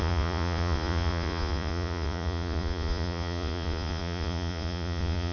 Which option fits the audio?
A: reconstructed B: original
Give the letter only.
A